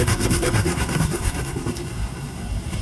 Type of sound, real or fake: fake